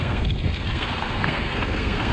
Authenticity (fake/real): fake